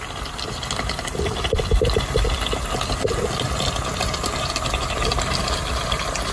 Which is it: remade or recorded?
recorded